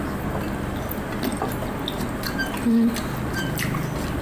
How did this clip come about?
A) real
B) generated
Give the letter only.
A